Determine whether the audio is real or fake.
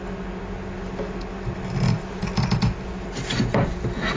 real